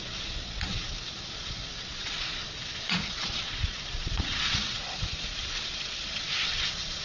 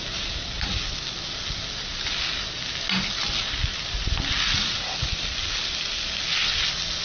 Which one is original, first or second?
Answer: second